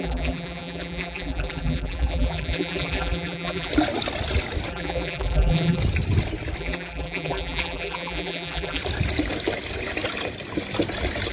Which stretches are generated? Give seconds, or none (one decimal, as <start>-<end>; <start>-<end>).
0.0-3.7; 4.7-5.8; 6.6-8.8